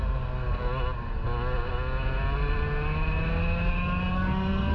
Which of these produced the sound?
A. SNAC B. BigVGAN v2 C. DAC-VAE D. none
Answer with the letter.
D